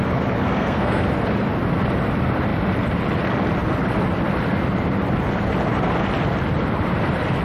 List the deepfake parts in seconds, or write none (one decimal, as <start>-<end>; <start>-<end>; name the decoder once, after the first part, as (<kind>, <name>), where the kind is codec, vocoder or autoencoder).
0.4-1.0 (codec, SNAC)